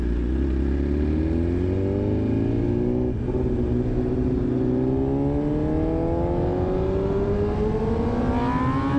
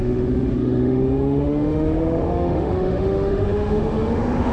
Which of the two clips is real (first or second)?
first